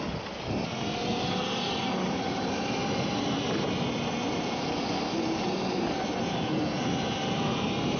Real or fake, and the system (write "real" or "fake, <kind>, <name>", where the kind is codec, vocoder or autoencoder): real